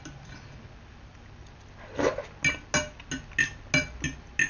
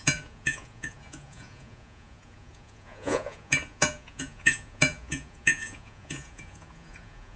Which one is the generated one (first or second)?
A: second